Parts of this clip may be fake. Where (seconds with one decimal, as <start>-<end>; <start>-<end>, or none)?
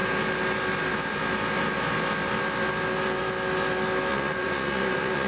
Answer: 4.1-5.3